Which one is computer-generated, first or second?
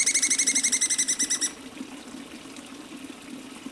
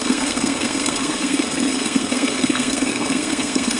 second